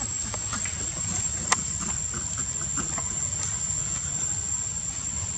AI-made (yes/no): no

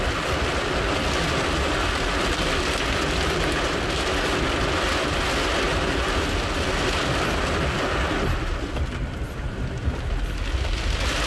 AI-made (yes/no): no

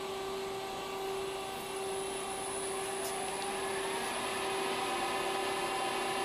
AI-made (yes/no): no